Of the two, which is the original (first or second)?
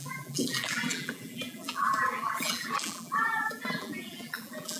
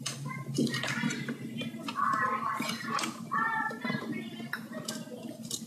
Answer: second